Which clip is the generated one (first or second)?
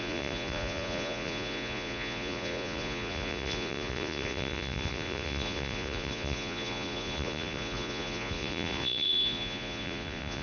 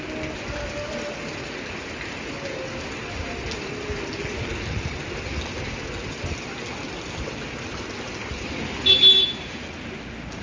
first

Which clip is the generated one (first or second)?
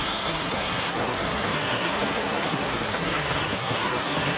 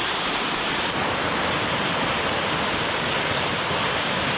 first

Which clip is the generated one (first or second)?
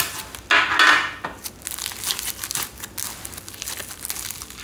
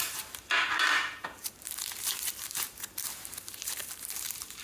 second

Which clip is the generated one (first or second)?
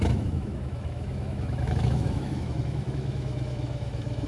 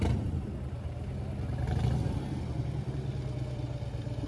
first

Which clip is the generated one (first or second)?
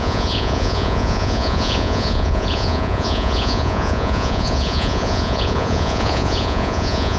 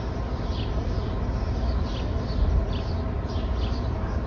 first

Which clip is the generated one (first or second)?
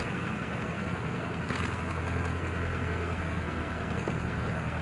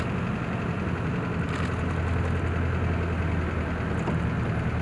first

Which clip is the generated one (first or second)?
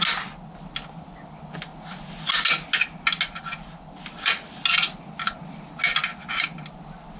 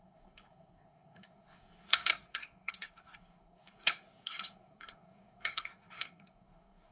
second